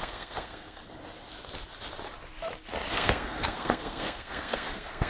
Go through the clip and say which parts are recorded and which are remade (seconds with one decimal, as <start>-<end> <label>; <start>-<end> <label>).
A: 0.0-0.8 remade; 0.8-2.9 recorded; 2.9-5.1 remade